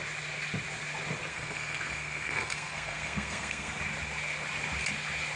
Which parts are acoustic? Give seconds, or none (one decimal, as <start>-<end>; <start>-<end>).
0.0-1.3; 3.8-5.4